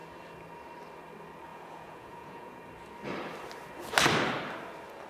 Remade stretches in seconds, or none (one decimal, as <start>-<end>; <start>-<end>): 1.5-2.6

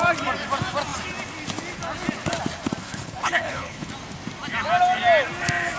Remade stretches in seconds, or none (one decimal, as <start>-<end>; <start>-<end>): 2.8-3.9

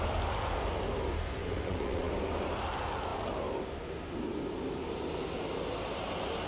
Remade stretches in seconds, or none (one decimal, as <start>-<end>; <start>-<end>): 1.4-2.1

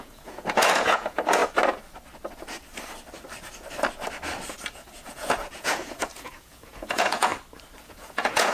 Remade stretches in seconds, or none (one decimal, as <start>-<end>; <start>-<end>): 0.0-1.4; 4.7-7.3; 7.8-8.5

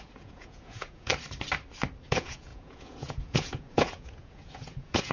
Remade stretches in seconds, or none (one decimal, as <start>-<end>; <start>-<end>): 0.0-1.1; 2.1-5.1

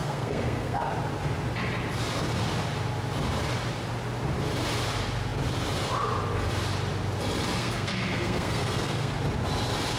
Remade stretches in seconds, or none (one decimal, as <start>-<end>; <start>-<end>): 0.0-0.9; 7.6-9.1